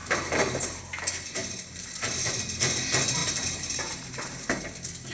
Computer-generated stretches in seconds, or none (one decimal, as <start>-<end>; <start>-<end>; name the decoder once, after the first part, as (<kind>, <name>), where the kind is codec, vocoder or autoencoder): 0.0-0.8 (vocoder, BigVGAN v2); 1.4-2.4; 3.2-4.6